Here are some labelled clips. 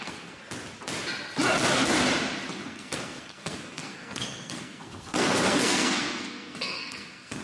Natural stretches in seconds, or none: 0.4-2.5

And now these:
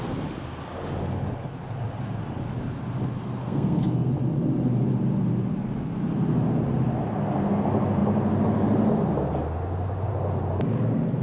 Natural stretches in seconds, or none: 0.0-3.4; 4.1-11.2

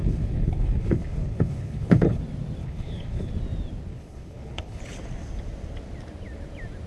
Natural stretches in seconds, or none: 2.2-2.6; 3.3-3.9; 4.8-6.9

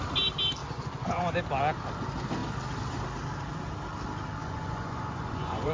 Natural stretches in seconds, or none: 0.0-0.6; 1.4-4.4

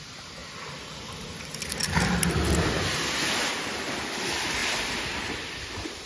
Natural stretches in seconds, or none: 0.0-6.1

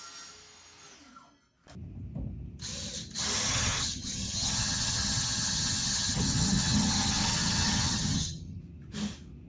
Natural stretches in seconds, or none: 0.0-3.5; 8.6-9.5

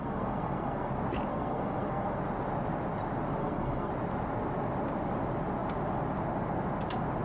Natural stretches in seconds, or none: 0.9-1.3; 2.2-3.4; 3.9-7.2

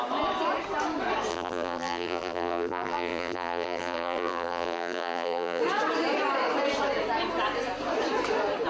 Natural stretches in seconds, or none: 0.0-1.3; 5.6-8.7